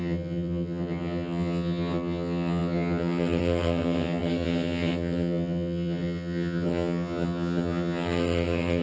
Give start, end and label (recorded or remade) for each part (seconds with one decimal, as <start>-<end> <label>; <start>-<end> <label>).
0.0-8.8 remade